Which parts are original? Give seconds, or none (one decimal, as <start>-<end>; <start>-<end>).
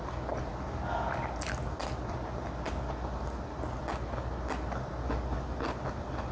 0.0-6.3